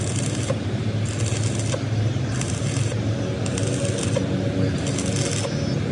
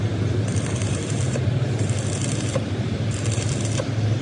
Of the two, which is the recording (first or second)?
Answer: first